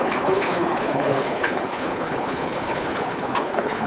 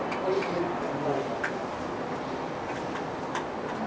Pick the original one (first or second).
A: second